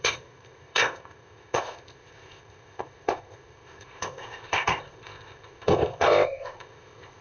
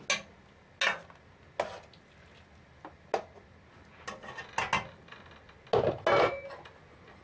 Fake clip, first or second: first